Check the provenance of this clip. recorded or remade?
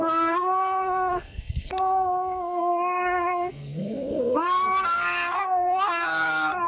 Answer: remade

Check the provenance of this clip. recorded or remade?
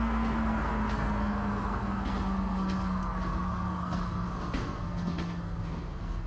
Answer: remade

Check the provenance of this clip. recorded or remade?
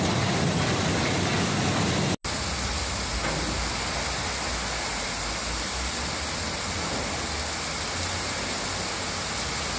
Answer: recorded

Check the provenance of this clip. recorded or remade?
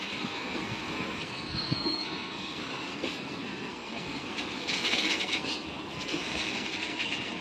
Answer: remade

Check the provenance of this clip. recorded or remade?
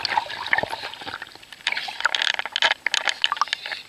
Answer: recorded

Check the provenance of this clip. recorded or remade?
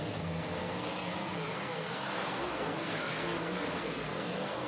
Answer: remade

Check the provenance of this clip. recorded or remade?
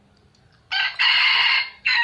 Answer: recorded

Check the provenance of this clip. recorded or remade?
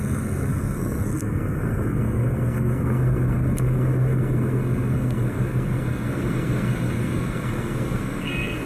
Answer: remade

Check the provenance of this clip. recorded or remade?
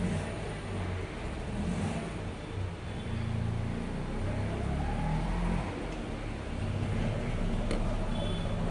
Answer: recorded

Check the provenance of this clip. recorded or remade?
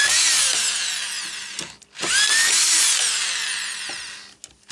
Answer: recorded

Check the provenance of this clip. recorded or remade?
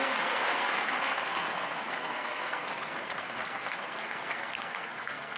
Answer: remade